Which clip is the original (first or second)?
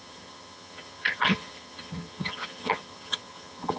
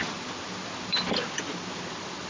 second